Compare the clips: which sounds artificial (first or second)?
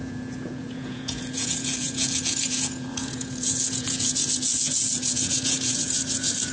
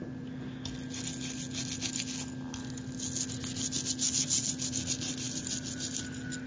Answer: first